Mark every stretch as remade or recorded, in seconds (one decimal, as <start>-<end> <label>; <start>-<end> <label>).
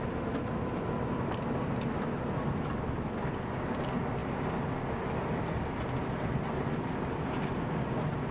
0.0-8.3 recorded